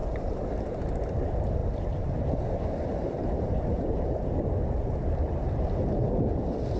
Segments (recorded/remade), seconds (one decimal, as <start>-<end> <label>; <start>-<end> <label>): 0.0-1.2 recorded; 1.2-1.6 remade; 1.6-2.8 recorded; 2.8-4.2 remade; 4.2-6.8 recorded